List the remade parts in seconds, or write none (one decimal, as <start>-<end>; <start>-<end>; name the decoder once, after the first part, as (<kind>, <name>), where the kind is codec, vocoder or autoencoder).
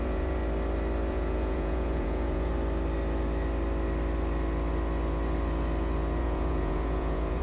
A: 0.0-0.4 (vocoder, Vocos); 1.1-2.5; 6.2-7.4